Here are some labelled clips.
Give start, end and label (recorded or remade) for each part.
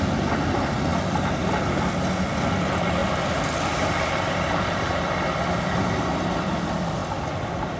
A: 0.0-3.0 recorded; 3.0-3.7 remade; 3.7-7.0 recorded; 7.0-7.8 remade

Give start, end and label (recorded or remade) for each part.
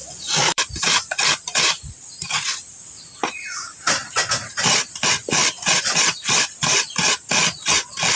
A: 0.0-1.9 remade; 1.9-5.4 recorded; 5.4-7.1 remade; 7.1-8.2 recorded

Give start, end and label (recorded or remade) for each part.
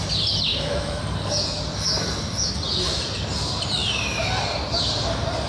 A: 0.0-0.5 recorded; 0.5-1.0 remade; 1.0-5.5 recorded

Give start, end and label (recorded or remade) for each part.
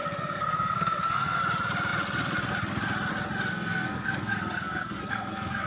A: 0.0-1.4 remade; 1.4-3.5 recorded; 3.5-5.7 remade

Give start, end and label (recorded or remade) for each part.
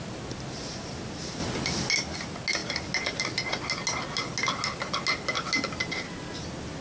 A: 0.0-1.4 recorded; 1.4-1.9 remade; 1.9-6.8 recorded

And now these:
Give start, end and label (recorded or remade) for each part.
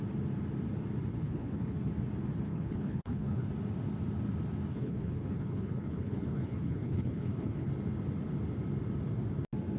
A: 0.0-1.1 recorded; 1.1-1.9 remade; 1.9-2.5 recorded; 2.5-3.5 remade; 3.5-4.7 recorded; 4.7-7.7 remade; 7.7-9.8 recorded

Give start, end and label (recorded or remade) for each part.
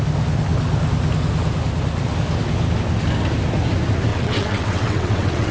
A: 0.0-4.1 recorded; 4.1-5.5 remade